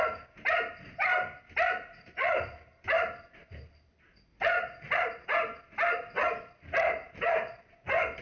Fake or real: real